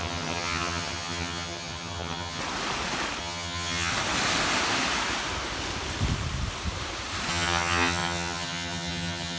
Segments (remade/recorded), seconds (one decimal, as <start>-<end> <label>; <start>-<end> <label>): 0.0-2.4 remade; 2.4-3.2 recorded; 3.2-3.9 remade; 3.9-7.3 recorded; 7.3-9.4 remade